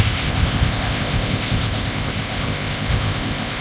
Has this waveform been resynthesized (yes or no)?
yes